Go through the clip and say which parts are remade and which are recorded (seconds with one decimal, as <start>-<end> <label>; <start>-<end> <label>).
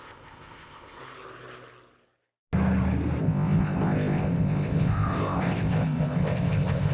0.0-1.0 remade; 1.0-3.2 recorded; 3.2-6.9 remade